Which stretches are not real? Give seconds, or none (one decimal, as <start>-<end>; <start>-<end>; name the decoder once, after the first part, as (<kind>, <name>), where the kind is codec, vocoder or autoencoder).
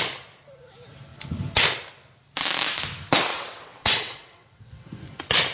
3.3-5.0 (vocoder, WaveNeXt)